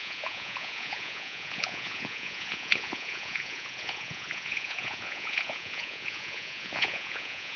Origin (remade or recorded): remade